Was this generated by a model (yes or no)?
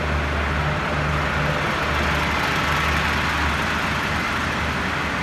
no